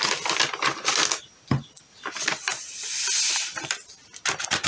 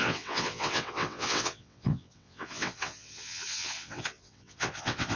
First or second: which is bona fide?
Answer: first